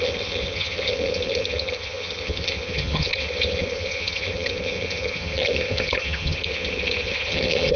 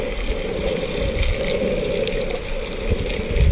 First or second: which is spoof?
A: first